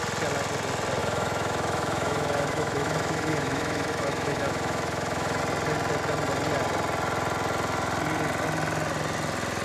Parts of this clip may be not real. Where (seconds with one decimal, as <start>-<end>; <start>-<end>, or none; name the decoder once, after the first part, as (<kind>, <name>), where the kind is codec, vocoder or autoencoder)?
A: 1.0-5.4 (autoencoder, DAC-VAE)